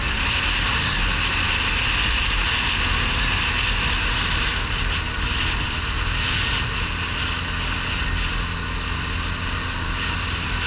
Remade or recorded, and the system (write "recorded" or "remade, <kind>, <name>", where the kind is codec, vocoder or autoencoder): recorded